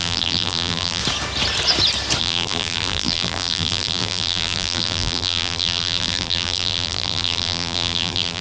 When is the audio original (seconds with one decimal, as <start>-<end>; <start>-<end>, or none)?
1.0-2.2